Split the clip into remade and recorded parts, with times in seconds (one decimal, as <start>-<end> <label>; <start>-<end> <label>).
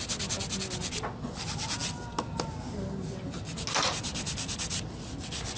0.0-5.6 recorded